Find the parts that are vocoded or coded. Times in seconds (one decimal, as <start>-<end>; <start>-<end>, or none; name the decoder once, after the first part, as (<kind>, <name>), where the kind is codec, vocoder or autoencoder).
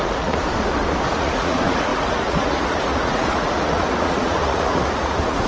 0.0-0.4 (vocoder, Vocos); 1.1-5.5